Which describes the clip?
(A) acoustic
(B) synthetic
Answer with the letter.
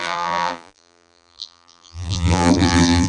B